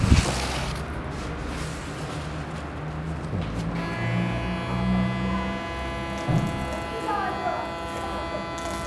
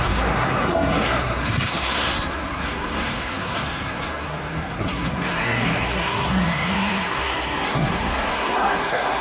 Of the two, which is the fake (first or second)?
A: second